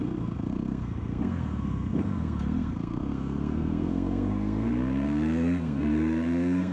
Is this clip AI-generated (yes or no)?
yes